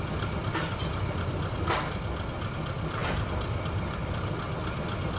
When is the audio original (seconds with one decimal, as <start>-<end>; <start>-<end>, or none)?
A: 0.0-3.0; 4.1-5.2